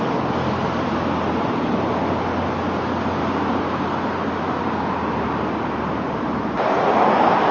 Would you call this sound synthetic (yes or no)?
no